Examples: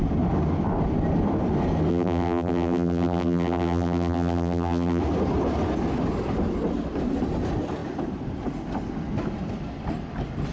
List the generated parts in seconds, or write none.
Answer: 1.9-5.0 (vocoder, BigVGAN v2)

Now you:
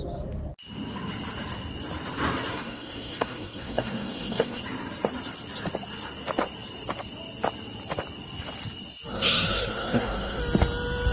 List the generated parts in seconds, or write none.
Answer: 2.5-4.6 (codec, SNAC); 9.1-10.4

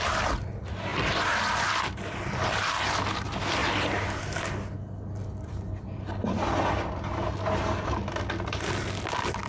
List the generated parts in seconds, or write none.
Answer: none

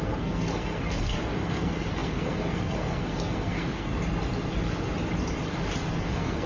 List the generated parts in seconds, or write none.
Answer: 0.0-3.9 (codec, SNAC); 6.0-6.5